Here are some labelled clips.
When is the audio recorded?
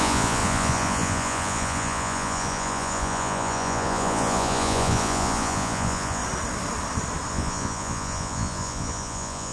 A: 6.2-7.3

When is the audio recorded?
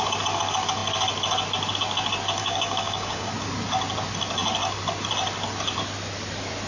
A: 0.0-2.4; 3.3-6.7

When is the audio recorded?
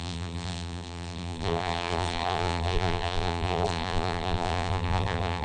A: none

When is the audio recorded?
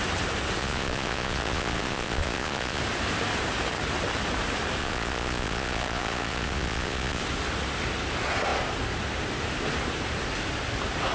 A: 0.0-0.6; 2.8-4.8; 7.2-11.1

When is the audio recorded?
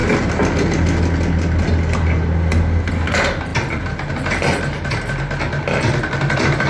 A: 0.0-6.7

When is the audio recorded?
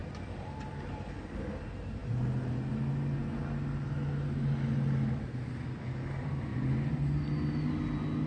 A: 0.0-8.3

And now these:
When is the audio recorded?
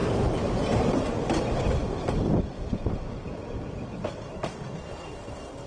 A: 0.0-5.7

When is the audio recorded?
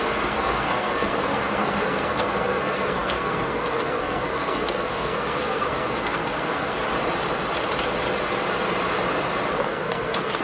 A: 6.8-9.5